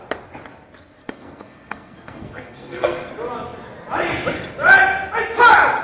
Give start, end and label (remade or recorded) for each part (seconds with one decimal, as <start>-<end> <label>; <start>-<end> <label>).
0.0-1.0 recorded; 1.0-3.1 remade; 3.1-5.8 recorded